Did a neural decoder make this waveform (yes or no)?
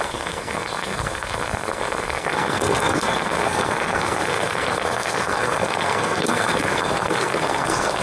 yes